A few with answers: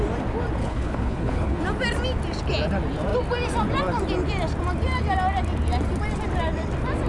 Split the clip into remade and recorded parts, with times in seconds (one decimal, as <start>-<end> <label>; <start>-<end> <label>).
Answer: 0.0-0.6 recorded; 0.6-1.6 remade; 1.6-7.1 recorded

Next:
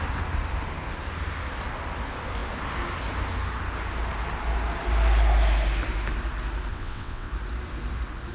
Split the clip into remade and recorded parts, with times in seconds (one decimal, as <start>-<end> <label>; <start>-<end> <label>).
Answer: 0.0-6.7 recorded; 6.7-7.3 remade; 7.3-8.3 recorded

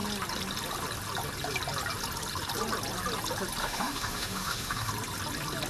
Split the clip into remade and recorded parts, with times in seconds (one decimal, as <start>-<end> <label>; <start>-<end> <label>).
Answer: 0.0-3.6 recorded; 3.6-4.9 remade; 4.9-5.7 recorded

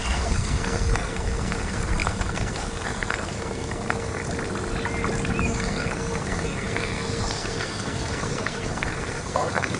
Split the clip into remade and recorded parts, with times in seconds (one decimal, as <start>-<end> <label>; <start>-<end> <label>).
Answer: 0.0-4.2 remade; 4.2-5.4 recorded; 5.4-9.8 remade

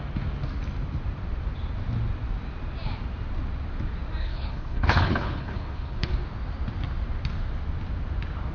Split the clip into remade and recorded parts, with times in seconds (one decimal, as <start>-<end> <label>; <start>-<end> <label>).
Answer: 0.0-4.2 recorded; 4.2-6.1 remade; 6.1-8.5 recorded